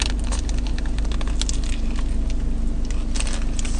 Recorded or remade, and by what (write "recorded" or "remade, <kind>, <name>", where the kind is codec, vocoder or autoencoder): recorded